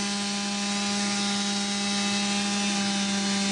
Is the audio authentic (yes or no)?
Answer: yes